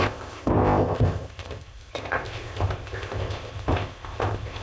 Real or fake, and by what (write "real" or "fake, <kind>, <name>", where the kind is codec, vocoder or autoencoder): fake, codec, ZipCodec